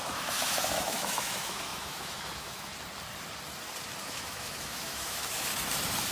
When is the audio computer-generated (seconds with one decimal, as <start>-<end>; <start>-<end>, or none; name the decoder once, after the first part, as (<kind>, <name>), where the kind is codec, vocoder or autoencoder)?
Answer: 0.0-2.7 (autoencoder, DAC-VAE); 4.0-5.5